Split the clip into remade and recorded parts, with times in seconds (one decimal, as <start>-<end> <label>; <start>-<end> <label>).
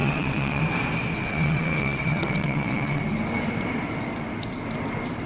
0.0-0.6 remade; 0.6-1.2 recorded; 1.2-3.0 remade; 3.0-5.3 recorded